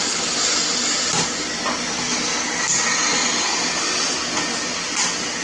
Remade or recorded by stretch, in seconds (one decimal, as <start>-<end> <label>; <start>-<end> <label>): 0.0-5.4 recorded

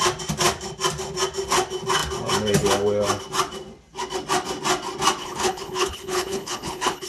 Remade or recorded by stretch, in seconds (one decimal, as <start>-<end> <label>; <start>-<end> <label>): 0.0-5.2 recorded; 5.2-7.1 remade

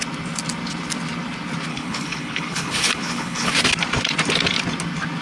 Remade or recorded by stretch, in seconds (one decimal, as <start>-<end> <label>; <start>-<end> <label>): 0.0-1.7 recorded; 1.7-3.5 remade; 3.5-5.2 recorded